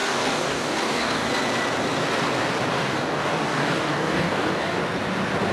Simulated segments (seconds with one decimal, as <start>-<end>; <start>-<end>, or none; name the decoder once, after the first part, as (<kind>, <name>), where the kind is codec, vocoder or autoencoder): 0.0-1.3 (codec, DAC); 2.7-4.8

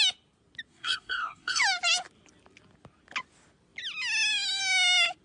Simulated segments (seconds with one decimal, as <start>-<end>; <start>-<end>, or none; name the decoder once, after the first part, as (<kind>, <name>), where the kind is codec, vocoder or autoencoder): 0.7-1.6 (codec, SNAC)

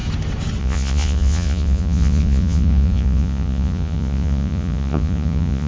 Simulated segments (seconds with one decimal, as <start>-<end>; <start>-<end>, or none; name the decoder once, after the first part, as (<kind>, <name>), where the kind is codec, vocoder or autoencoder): 0.6-5.7 (vocoder, Vocos)

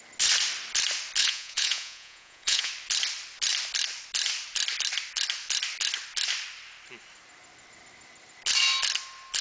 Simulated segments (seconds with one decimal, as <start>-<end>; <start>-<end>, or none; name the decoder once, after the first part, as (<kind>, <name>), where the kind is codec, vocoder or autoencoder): 1.2-2.7 (vocoder, Vocos)

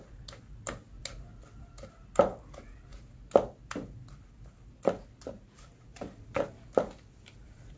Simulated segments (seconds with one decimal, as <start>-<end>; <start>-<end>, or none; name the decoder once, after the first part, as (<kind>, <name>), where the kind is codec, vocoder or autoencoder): none